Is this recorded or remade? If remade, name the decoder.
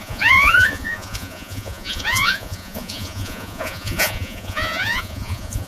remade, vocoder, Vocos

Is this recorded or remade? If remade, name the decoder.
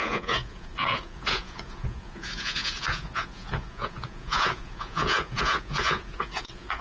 remade, vocoder, Vocos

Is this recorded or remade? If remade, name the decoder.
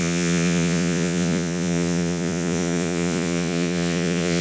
remade, vocoder, Vocos